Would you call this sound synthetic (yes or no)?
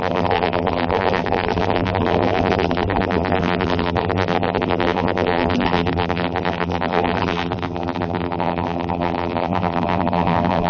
yes